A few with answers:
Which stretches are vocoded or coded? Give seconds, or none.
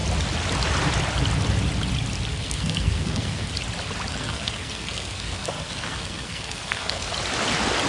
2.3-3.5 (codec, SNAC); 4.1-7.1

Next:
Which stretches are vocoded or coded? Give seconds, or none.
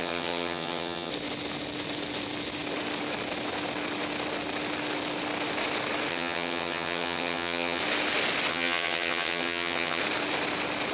0.0-1.1 (vocoder, HiFi-GAN); 6.1-7.8; 8.5-10.0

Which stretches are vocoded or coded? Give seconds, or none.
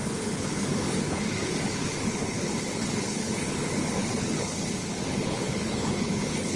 0.0-6.6 (codec, HILCodec)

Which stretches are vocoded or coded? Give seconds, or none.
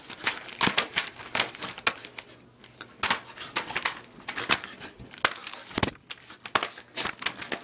none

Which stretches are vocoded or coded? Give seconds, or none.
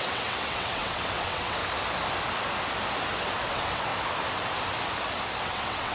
0.0-1.6 (vocoder, WaveNeXt); 3.2-3.9; 5.4-5.9